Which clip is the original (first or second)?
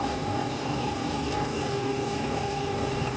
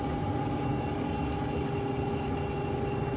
second